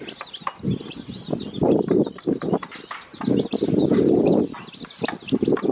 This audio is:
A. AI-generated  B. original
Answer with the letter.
B